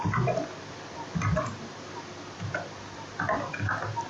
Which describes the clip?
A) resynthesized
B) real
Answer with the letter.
B